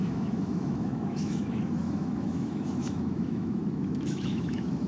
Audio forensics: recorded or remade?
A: remade